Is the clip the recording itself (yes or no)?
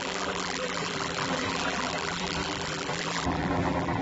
no